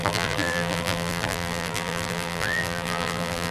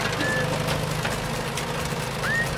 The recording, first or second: second